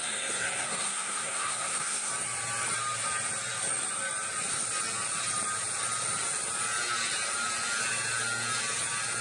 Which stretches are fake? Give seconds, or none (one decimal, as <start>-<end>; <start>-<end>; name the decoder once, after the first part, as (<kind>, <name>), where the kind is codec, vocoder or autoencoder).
0.0-2.1 (codec, SNAC)